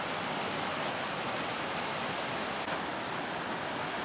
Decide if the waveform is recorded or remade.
recorded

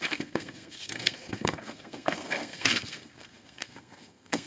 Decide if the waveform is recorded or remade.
remade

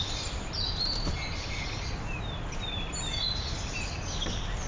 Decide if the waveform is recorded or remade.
recorded